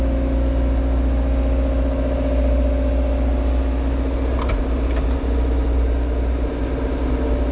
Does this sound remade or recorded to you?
recorded